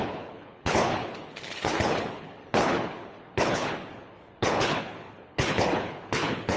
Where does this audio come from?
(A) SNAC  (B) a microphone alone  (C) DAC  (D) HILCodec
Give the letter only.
D